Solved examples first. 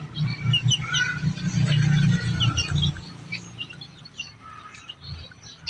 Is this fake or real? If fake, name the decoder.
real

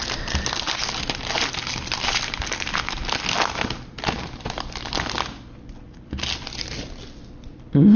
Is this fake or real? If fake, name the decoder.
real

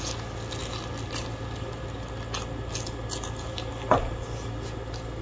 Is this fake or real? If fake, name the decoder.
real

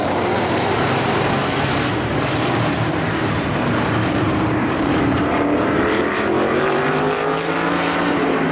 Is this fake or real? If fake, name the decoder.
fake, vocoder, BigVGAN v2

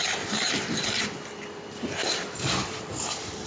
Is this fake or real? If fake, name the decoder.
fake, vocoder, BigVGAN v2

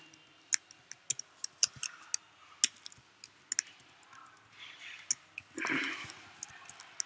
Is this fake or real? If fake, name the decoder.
real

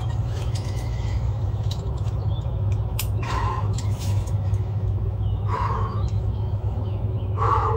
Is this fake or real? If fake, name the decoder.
fake, autoencoder, DAC-VAE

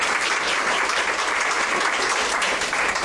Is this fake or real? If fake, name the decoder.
fake, vocoder, BigVGAN v2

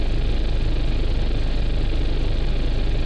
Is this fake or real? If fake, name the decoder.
real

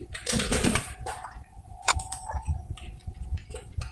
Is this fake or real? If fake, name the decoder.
fake, vocoder, Vocos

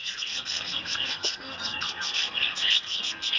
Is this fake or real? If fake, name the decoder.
fake, codec, SNAC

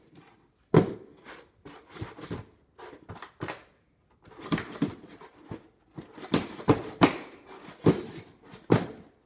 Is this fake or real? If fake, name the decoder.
real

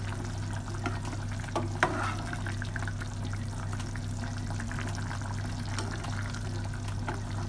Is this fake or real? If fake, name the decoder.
real